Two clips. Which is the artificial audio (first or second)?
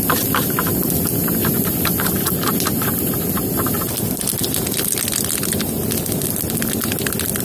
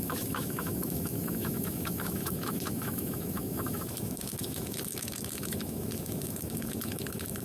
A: second